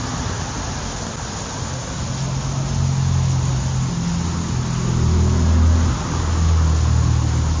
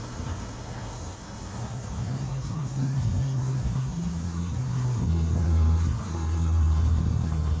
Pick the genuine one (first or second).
first